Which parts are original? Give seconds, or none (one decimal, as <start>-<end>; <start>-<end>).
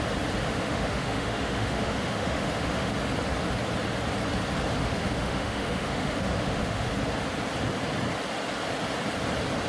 0.0-0.5; 2.9-4.8; 6.9-9.7